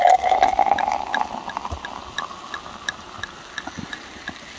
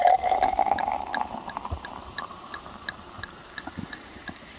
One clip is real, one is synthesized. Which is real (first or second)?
first